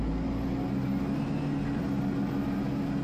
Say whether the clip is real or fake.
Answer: real